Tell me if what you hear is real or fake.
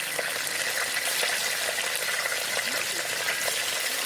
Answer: real